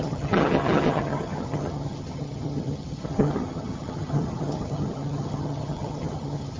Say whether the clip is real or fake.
fake